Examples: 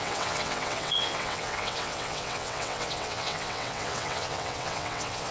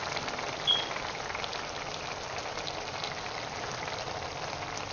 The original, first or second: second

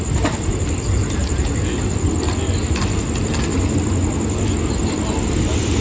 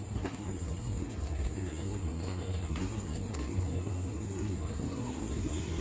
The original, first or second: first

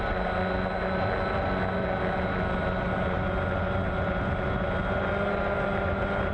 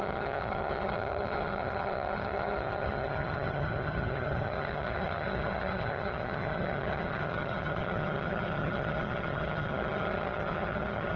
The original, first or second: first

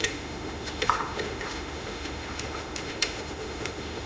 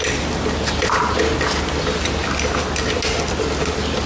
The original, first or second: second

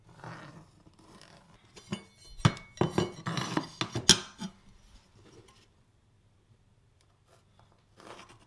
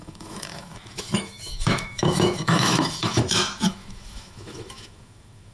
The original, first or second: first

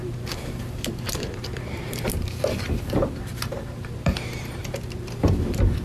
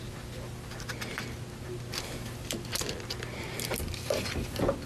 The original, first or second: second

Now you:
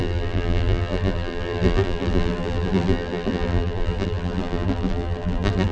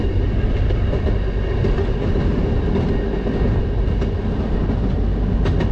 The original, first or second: second